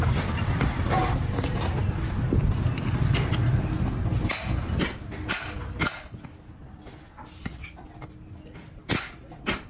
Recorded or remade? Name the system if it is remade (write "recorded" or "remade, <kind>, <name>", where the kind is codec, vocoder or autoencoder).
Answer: recorded